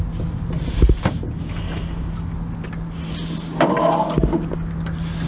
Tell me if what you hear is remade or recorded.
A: recorded